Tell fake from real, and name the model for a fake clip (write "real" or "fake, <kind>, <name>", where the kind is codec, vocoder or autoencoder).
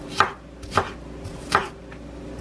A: real